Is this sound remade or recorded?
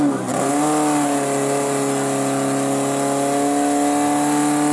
recorded